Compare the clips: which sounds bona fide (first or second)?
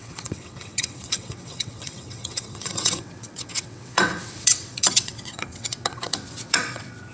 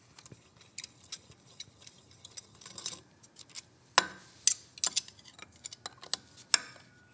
second